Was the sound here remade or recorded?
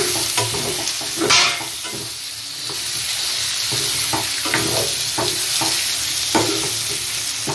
recorded